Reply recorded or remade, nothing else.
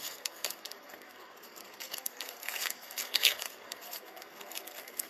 remade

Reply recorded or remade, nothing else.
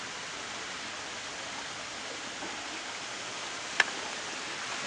recorded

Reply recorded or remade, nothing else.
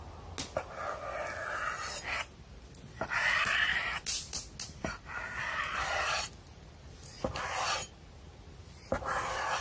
recorded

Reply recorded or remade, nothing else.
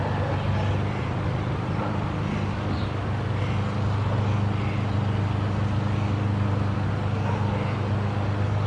recorded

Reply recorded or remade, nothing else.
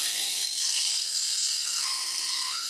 remade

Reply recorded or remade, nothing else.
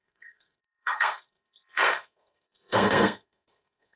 remade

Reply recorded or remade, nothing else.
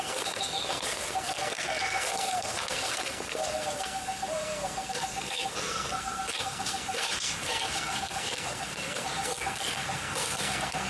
remade